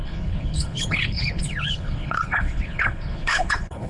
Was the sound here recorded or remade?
remade